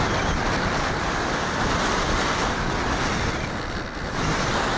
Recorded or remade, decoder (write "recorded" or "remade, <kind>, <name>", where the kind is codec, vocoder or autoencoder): recorded